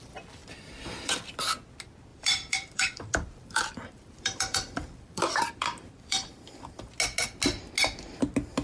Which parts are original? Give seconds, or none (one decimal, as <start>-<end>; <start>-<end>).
0.0-0.4; 1.2-2.1; 6.9-8.6

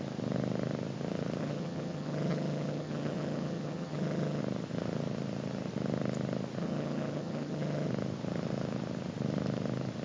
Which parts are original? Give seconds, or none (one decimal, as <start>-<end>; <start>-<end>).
0.0-1.4; 4.4-6.6; 7.9-10.0

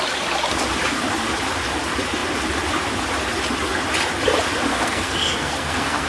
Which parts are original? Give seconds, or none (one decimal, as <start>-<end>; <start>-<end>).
0.0-4.7